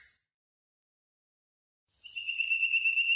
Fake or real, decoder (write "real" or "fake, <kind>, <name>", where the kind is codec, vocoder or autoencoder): real